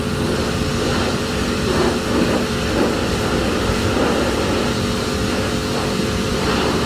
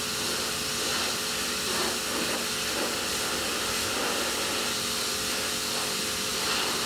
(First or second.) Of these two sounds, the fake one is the first